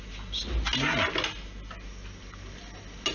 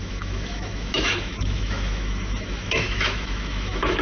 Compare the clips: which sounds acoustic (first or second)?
first